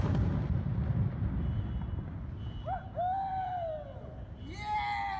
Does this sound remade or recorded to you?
recorded